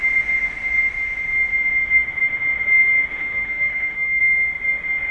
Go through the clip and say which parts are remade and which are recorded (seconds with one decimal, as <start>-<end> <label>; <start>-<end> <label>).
0.0-3.1 recorded; 3.1-4.2 remade; 4.2-5.1 recorded